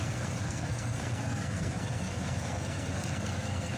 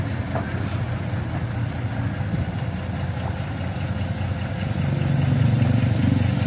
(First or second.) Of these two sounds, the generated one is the first